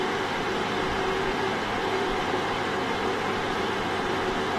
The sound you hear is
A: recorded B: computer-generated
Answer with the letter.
B